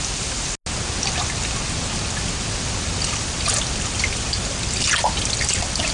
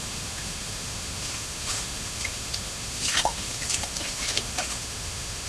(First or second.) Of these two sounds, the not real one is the second